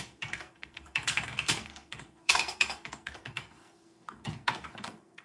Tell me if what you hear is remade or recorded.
remade